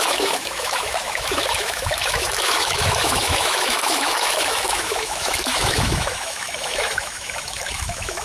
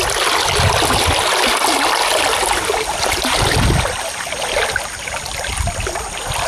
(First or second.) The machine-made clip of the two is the first